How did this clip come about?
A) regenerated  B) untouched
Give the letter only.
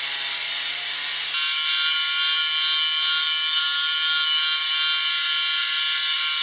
B